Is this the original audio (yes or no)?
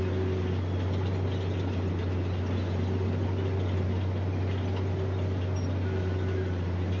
yes